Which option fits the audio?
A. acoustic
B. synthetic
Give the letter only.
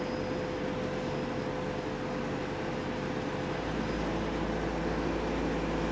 A